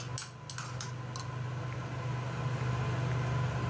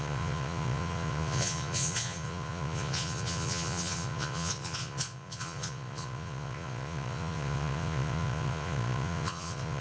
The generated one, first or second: second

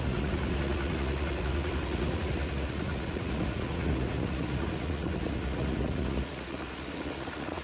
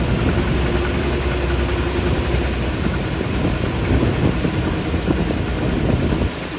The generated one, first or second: first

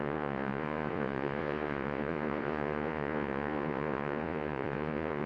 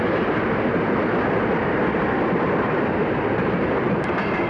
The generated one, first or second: first